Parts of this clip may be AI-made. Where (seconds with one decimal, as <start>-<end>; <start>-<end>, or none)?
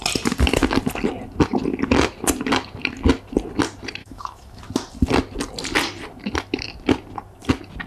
4.0-4.6